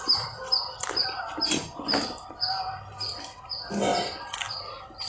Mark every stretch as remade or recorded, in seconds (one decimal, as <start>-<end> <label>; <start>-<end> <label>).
0.0-5.1 recorded